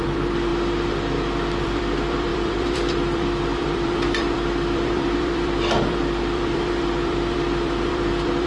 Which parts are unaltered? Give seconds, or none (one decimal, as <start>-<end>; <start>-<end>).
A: 0.5-1.6